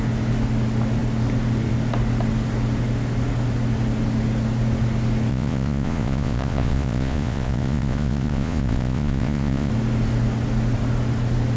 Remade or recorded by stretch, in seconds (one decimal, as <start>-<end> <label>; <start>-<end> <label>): 0.0-5.3 recorded; 5.3-9.7 remade; 9.7-11.6 recorded